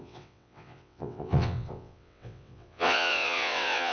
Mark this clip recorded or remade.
remade